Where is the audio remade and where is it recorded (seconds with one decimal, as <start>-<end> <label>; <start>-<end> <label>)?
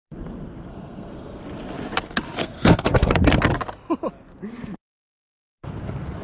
0.0-0.7 recorded; 0.7-1.4 remade; 1.4-2.4 recorded; 2.4-3.1 remade; 3.1-6.2 recorded